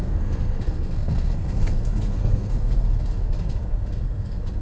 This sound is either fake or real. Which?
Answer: fake